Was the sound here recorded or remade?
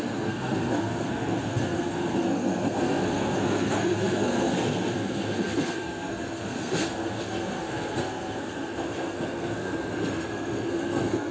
remade